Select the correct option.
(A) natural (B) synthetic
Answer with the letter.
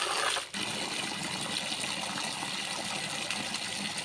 A